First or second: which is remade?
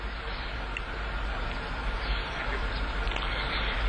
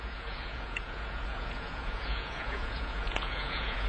second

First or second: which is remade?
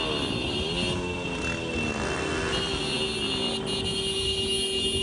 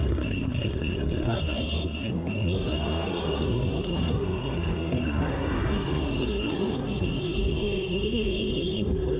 second